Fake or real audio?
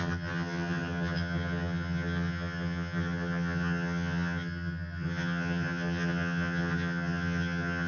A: fake